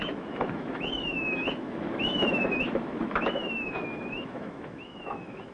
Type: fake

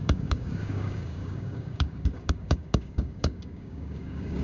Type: fake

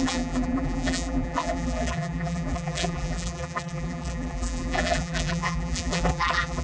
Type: fake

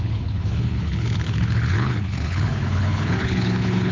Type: fake